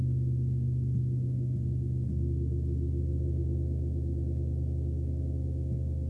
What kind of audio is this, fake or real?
real